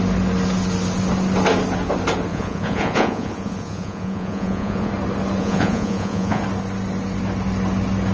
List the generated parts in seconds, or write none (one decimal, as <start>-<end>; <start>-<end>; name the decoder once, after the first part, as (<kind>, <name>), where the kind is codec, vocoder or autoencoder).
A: 2.3-4.9 (vocoder, Vocos); 5.4-6.4